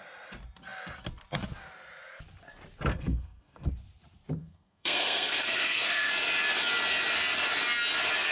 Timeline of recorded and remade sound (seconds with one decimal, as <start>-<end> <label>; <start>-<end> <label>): 0.0-2.9 recorded; 2.9-3.7 remade; 3.7-4.4 recorded; 4.4-6.1 remade; 6.1-8.3 recorded